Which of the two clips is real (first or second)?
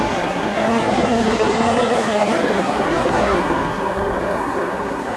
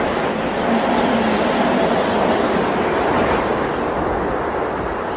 second